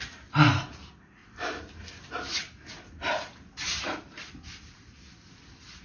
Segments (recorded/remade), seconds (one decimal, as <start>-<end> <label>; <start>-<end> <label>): 0.0-5.8 recorded